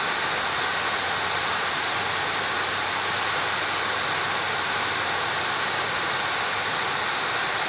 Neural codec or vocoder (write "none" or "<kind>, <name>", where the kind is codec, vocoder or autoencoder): none